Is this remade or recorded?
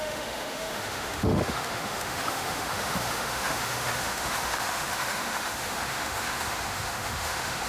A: remade